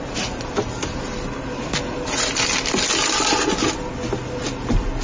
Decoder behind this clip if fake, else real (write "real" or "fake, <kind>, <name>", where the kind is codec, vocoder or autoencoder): real